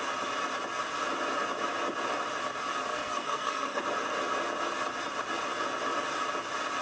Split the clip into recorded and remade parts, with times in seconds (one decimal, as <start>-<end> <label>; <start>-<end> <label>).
0.0-2.9 recorded; 2.9-3.8 remade; 3.8-6.8 recorded